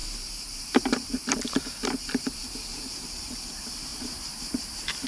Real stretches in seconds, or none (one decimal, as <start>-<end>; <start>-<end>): 3.1-3.9